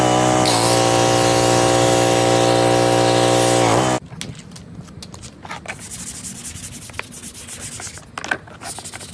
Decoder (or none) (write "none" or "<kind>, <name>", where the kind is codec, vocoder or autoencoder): none